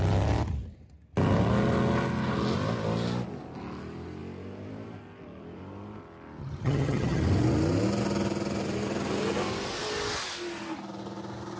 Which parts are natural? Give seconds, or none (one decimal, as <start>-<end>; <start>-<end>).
0.0-6.4; 7.2-11.6